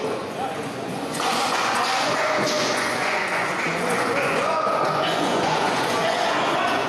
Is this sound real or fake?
fake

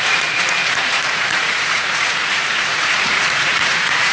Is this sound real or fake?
fake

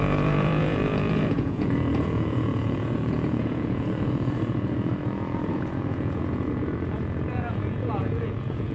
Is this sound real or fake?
fake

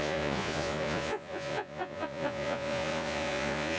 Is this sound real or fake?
fake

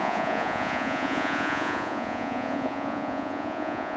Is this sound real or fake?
fake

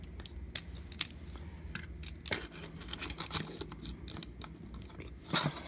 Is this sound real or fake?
real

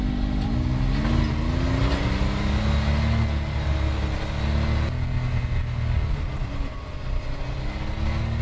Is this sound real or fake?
real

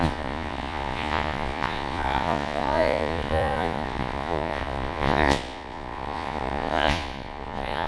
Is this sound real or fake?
fake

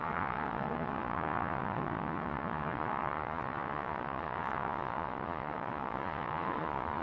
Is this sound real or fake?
fake